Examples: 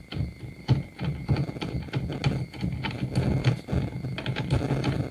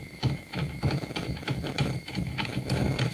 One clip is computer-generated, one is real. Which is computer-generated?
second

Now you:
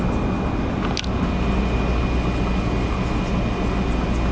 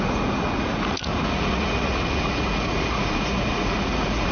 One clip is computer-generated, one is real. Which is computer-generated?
second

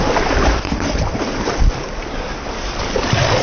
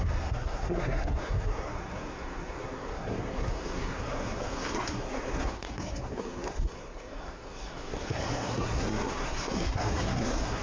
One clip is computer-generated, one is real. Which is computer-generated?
second